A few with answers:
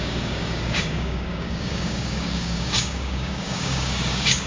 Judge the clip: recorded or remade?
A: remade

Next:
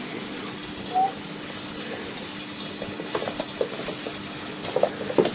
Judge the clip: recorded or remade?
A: recorded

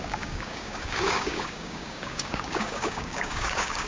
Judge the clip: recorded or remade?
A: remade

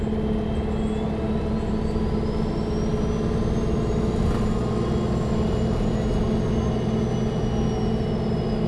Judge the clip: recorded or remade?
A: recorded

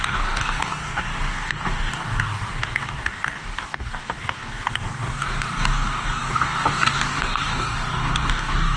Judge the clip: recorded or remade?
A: remade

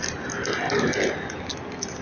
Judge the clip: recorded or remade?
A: recorded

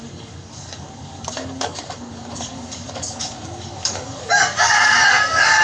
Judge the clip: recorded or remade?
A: remade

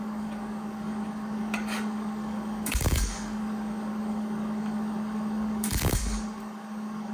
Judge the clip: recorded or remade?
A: remade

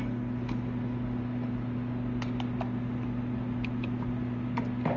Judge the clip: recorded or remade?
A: recorded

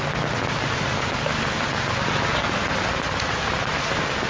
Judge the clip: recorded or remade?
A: recorded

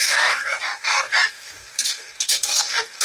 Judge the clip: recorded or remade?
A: remade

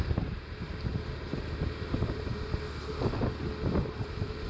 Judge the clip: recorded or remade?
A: recorded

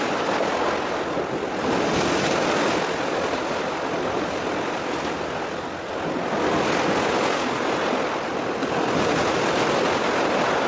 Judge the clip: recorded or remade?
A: recorded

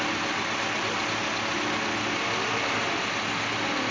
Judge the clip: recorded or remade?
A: recorded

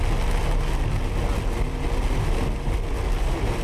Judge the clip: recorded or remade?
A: recorded